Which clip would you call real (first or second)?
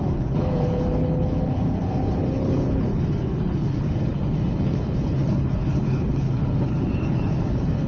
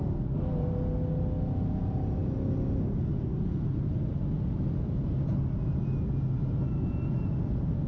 second